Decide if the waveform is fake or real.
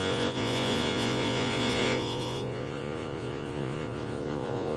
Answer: fake